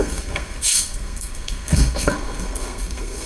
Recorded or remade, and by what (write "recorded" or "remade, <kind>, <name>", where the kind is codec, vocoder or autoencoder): remade, codec, SNAC